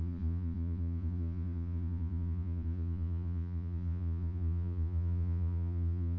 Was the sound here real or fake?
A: fake